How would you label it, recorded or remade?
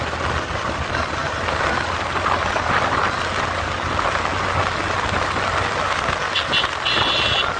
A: recorded